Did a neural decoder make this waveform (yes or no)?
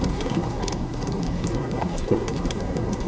yes